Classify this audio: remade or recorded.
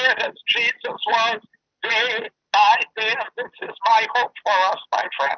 recorded